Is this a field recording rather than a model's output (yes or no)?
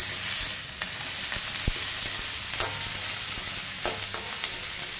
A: yes